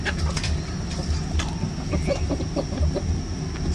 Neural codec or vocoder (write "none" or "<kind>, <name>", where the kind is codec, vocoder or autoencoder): none